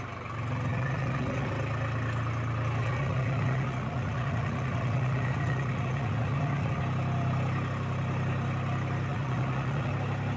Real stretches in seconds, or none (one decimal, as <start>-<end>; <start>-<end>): 0.0-0.7; 1.5-2.8; 6.8-9.1; 9.9-10.4